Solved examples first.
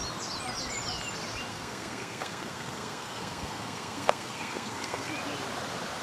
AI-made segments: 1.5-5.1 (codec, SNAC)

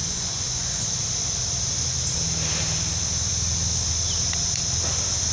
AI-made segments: 0.0-0.9 (vocoder, Vocos)

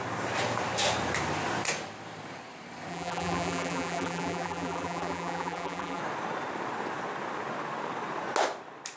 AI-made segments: 2.9-6.0 (vocoder, BigVGAN v2)

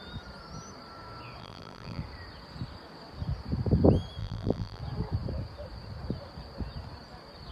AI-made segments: 1.4-2.0 (vocoder, BigVGAN v2); 4.2-4.8

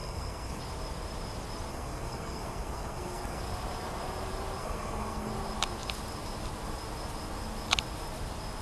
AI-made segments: 0.0-0.6 (codec, SNAC); 1.7-3.4; 4.6-5.3